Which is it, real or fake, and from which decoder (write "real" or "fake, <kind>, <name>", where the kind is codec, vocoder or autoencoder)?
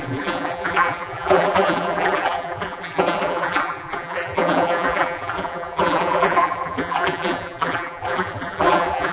fake, vocoder, BigVGAN v2